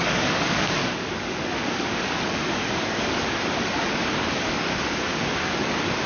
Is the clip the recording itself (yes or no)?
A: no